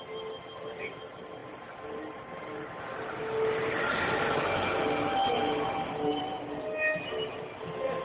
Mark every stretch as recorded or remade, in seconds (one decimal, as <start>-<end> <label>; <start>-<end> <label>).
0.0-8.0 recorded

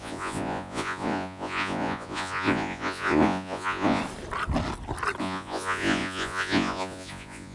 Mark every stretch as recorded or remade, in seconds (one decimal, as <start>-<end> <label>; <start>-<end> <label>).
0.0-4.0 remade; 4.0-5.2 recorded; 5.2-7.5 remade

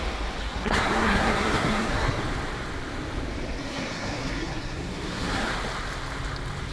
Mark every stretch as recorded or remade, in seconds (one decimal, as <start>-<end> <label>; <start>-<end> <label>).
0.0-0.4 recorded; 0.4-2.2 remade; 2.2-3.6 recorded; 3.6-5.5 remade; 5.5-6.7 recorded

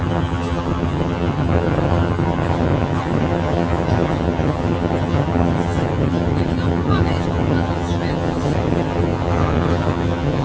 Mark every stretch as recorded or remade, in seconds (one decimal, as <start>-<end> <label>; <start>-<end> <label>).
0.0-10.4 remade

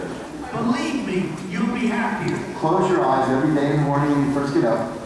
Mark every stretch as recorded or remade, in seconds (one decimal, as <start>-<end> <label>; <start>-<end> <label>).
0.0-2.5 recorded; 2.5-4.5 remade; 4.5-5.1 recorded

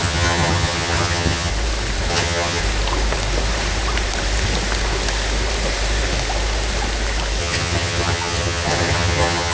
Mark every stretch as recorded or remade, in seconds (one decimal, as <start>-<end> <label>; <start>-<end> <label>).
0.0-1.5 remade; 1.5-2.1 recorded; 2.1-2.6 remade; 2.6-7.4 recorded; 7.4-9.5 remade

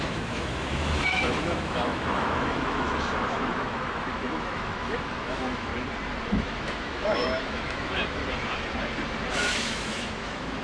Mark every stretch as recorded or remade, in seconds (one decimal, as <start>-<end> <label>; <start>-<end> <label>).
0.0-5.7 remade; 5.7-6.3 recorded; 6.3-8.2 remade; 8.2-9.3 recorded; 9.3-10.6 remade

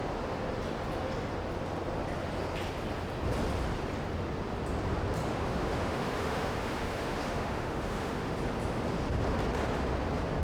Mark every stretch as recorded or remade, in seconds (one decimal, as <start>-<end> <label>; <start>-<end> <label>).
0.0-5.3 recorded; 5.3-8.4 remade; 8.4-10.4 recorded